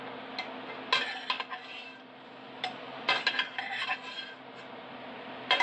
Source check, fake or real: real